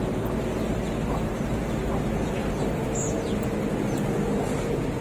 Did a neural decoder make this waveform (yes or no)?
no